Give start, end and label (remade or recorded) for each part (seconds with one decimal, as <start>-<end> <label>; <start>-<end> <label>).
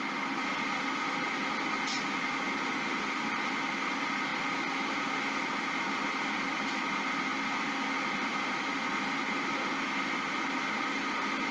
0.0-11.5 recorded